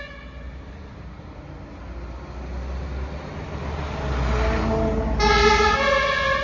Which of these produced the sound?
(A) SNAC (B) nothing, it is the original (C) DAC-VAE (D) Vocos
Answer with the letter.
B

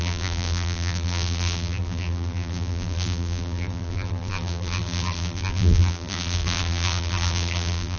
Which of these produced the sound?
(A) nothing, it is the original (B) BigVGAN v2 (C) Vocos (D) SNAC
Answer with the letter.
B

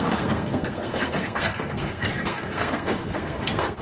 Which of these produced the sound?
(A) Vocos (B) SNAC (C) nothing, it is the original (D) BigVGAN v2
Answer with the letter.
B